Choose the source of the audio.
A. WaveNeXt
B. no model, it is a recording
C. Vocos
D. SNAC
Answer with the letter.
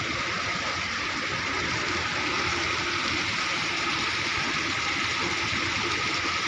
B